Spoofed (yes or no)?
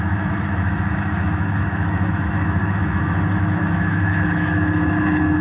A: yes